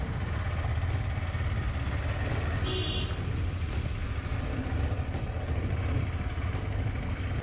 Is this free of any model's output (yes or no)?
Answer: yes